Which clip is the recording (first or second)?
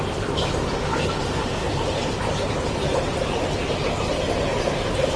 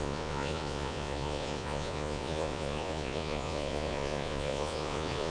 first